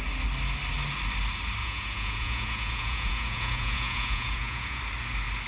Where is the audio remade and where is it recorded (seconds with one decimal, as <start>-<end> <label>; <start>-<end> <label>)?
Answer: 0.0-1.6 recorded; 1.6-4.8 remade; 4.8-5.5 recorded